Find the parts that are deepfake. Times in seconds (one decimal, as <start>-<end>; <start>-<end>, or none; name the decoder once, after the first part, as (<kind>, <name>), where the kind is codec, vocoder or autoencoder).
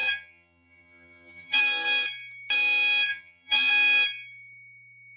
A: 0.0-1.6 (vocoder, HiFi-GAN); 3.1-3.7